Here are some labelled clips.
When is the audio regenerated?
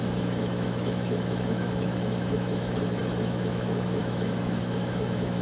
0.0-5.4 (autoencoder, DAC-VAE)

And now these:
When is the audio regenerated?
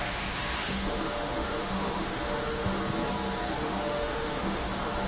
0.0-2.8 (autoencoder, DAC-VAE); 3.5-5.1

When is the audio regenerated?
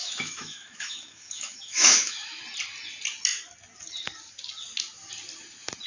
0.0-2.4 (autoencoder, DAC-VAE)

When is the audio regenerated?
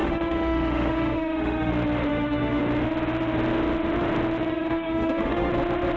0.0-1.7 (autoencoder, DAC-VAE); 2.1-2.6; 4.5-5.5